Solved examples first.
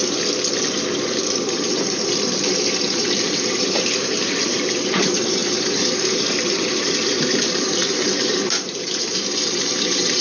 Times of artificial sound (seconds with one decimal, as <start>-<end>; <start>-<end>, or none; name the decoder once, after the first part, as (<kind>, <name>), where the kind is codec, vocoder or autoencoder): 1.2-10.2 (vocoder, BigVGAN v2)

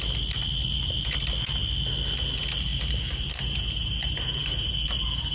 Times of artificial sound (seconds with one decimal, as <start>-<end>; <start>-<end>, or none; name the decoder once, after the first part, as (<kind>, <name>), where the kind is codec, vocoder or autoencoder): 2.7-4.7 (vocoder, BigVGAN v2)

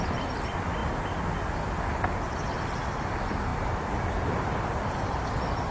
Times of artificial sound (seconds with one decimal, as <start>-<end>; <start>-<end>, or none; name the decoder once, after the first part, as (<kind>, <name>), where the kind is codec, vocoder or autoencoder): 3.5-5.2 (vocoder, BigVGAN v2)

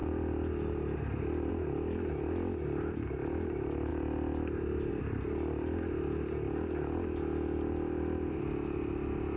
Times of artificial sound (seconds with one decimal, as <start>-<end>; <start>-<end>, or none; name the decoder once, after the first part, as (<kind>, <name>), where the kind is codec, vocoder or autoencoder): none

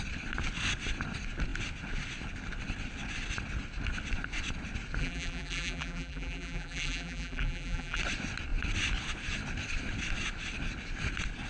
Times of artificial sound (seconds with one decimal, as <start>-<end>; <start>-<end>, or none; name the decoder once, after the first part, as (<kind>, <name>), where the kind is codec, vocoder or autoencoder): 5.0-8.0 (vocoder, BigVGAN v2)

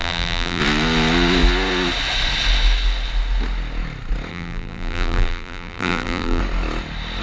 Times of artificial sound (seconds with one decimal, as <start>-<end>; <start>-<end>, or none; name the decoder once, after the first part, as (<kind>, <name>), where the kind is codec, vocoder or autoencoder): 0.0-0.6 (vocoder, BigVGAN v2); 4.3-6.4

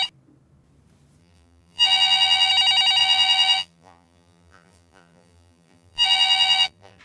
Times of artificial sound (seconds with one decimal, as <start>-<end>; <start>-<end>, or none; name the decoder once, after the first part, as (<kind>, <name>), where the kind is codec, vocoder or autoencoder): 1.2-2.5 (vocoder, BigVGAN v2); 3.0-7.0

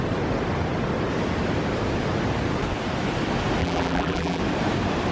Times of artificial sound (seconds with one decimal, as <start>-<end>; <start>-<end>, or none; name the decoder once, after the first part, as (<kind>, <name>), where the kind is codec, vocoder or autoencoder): 3.6-4.4 (vocoder, BigVGAN v2)